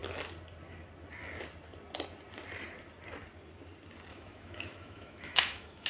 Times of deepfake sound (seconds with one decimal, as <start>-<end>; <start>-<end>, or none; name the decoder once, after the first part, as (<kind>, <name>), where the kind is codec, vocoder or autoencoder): 4.1-5.9 (autoencoder, DAC-VAE)